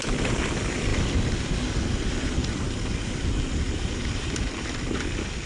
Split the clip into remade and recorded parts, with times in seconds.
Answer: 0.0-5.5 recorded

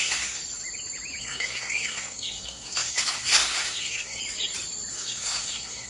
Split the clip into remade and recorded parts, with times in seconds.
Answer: 0.0-0.4 remade; 0.4-1.2 recorded; 1.2-4.2 remade; 4.2-4.9 recorded; 4.9-5.9 remade

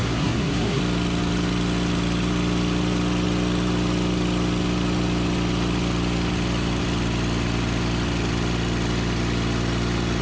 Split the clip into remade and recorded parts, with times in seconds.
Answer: 0.0-0.8 remade; 0.8-10.2 recorded

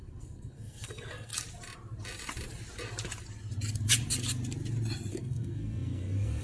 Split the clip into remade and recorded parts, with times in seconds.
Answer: 0.0-1.3 remade; 1.3-5.1 recorded; 5.1-6.4 remade

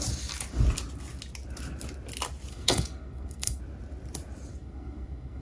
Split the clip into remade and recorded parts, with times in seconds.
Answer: 0.0-2.5 recorded; 2.5-3.6 remade; 3.6-4.5 recorded; 4.5-5.4 remade

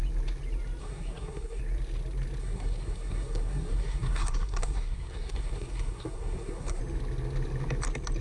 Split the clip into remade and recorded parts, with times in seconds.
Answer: 0.0-0.8 recorded; 0.8-1.6 remade; 1.6-2.4 recorded; 2.4-6.8 remade; 6.8-8.2 recorded

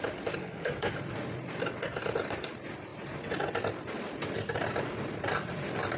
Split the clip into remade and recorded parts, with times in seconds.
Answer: 0.0-0.4 recorded; 0.4-0.9 remade; 0.9-6.0 recorded